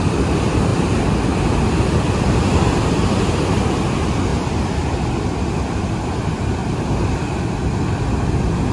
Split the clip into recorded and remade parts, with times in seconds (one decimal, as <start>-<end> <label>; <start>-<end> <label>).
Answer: 0.0-8.7 recorded